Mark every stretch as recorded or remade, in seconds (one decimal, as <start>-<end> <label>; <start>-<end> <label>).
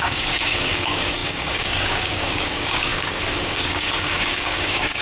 0.0-5.0 remade